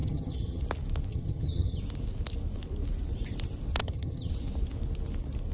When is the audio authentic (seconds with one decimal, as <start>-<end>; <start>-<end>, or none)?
0.6-1.1; 1.8-3.8; 4.3-5.5